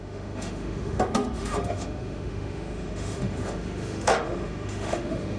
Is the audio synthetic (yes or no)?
yes